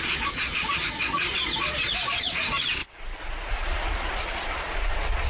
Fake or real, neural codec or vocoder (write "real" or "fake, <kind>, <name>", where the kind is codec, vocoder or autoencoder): fake, vocoder, Vocos